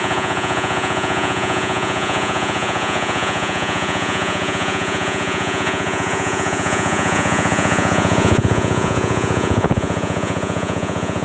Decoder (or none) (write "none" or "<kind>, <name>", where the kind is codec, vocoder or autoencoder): vocoder, Vocos